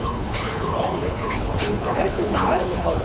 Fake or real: fake